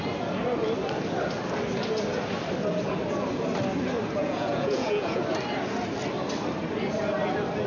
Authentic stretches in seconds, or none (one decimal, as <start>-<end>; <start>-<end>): 0.0-4.2; 5.2-7.7